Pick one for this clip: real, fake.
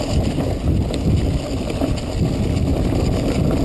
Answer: real